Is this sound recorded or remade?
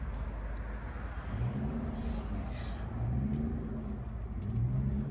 recorded